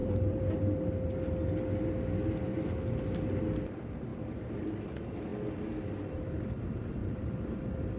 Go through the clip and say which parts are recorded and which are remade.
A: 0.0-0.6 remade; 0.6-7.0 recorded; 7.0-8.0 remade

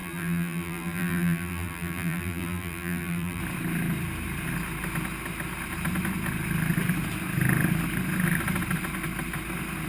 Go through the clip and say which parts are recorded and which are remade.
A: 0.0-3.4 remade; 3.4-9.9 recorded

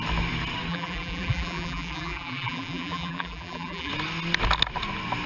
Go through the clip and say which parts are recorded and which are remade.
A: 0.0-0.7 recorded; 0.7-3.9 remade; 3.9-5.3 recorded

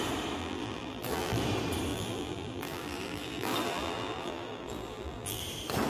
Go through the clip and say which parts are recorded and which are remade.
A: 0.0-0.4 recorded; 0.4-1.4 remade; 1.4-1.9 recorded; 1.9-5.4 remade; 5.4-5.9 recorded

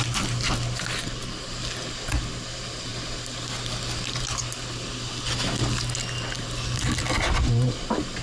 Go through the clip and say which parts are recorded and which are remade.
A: 0.0-8.2 recorded

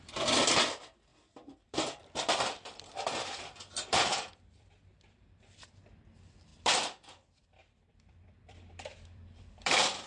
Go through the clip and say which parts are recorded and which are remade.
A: 0.0-1.1 recorded; 1.1-5.4 remade; 5.4-6.5 recorded; 6.5-10.1 remade

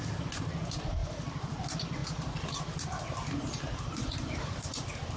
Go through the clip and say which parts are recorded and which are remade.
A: 0.0-1.0 recorded; 1.0-1.6 remade; 1.6-2.0 recorded; 2.0-5.2 remade

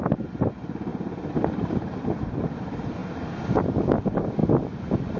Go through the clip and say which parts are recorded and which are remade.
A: 0.0-0.9 recorded; 0.9-2.6 remade; 2.6-3.0 recorded; 3.0-3.8 remade; 3.8-5.2 recorded